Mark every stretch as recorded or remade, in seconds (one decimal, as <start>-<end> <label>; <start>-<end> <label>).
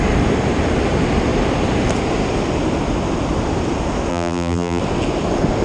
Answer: 0.0-4.1 recorded; 4.1-4.8 remade; 4.8-5.6 recorded